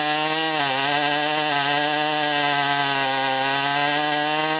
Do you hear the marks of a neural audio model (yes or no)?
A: no